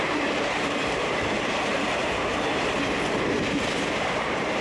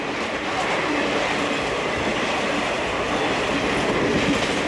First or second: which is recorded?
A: second